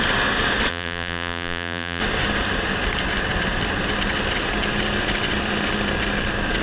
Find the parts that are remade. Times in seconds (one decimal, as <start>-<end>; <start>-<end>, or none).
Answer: 0.7-2.0